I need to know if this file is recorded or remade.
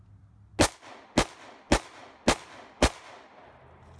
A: recorded